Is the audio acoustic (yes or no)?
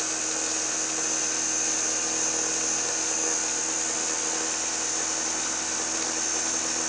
yes